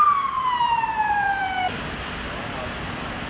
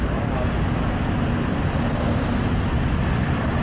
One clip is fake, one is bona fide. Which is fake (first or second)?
first